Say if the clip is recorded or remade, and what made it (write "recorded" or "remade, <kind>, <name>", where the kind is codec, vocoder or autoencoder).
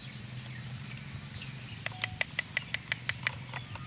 recorded